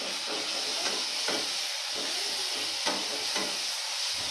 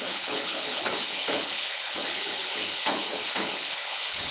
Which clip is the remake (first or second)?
second